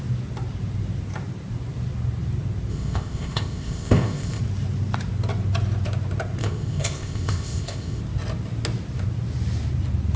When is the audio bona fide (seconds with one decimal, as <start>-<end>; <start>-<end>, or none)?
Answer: 0.0-2.7; 4.4-6.4; 8.0-10.2